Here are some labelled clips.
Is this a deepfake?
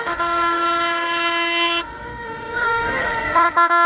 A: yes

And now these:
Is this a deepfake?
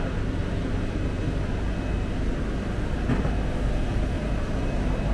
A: no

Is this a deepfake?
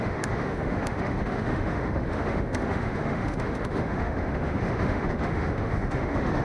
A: yes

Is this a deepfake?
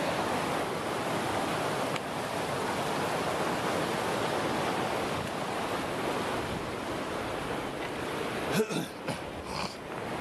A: no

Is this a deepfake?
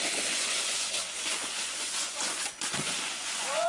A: yes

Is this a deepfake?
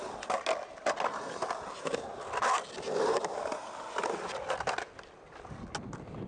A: no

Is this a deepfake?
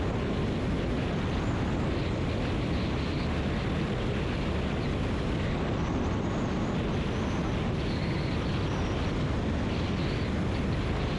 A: no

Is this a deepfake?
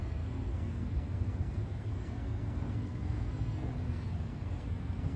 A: yes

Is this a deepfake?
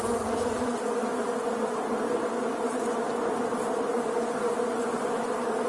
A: no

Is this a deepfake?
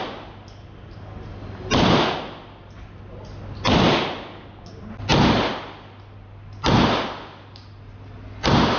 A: no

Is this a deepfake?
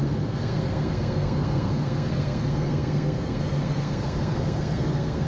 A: yes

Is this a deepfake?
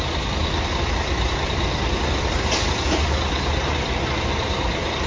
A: no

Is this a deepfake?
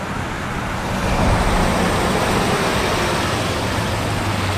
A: no